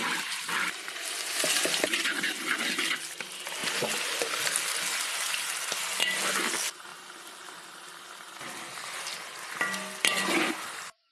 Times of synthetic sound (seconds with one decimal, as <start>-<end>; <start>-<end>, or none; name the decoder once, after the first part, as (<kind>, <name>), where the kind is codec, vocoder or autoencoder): none